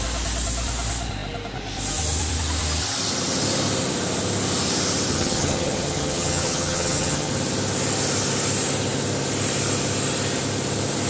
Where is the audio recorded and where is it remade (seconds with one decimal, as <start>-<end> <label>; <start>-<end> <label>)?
0.0-5.1 recorded; 5.1-7.3 remade; 7.3-11.1 recorded